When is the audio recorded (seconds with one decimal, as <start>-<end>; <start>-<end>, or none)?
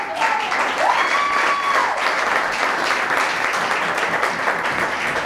0.0-5.3